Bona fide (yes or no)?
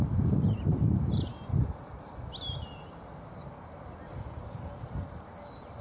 yes